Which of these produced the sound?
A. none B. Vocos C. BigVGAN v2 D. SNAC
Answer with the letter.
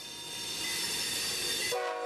A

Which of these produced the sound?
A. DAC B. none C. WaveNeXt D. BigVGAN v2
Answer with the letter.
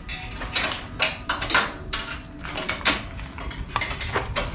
B